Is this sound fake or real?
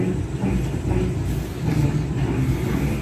real